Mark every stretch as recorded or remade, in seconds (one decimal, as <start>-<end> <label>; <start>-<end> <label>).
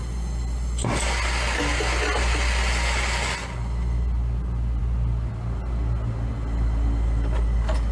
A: 0.0-7.9 recorded